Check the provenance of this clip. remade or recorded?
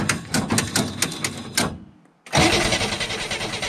recorded